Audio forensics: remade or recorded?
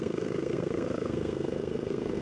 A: remade